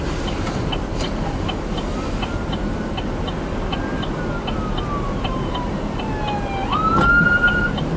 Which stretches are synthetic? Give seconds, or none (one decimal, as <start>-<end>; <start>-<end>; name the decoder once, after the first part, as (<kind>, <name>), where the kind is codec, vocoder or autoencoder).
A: 5.1-6.0 (vocoder, BigVGAN v2)